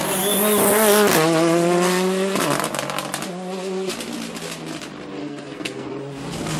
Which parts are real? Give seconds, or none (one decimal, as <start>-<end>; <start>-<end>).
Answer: 0.0-5.2; 5.9-6.6